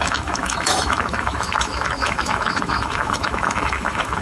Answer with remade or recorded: remade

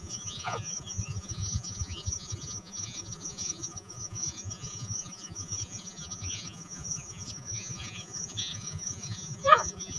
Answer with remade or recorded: remade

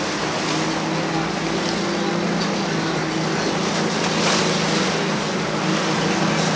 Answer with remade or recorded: recorded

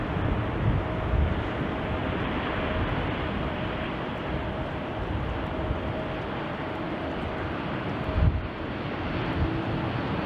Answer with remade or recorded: recorded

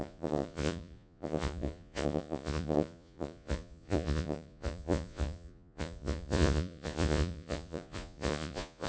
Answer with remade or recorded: remade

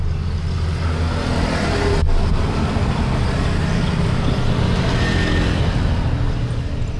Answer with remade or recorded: recorded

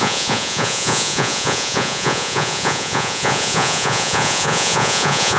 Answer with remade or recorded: remade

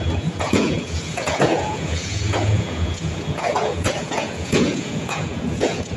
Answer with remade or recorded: remade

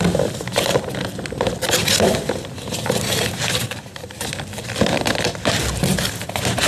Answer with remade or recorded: remade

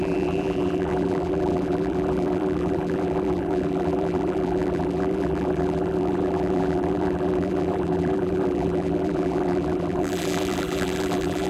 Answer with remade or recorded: remade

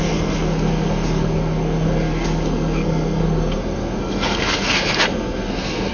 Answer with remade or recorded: remade